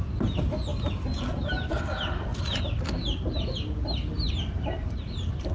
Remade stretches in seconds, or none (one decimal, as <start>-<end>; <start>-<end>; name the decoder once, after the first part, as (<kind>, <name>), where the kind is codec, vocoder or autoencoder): 0.7-1.7 (vocoder, BigVGAN v2)